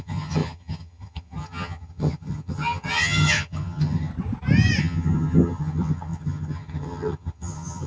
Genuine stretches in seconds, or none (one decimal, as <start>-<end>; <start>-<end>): 4.1-4.8